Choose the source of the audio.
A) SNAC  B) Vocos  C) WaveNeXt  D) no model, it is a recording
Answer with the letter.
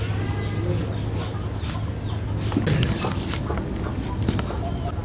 D